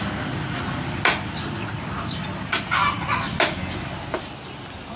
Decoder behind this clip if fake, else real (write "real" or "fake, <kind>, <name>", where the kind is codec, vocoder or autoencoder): real